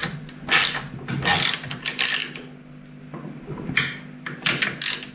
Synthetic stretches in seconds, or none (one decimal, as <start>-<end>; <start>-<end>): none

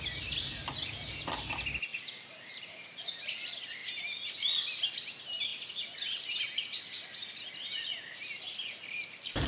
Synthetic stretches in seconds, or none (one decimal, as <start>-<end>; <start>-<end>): 1.9-3.3

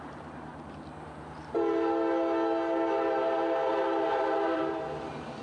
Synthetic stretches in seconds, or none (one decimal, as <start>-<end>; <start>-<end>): 0.0-0.5; 3.7-4.6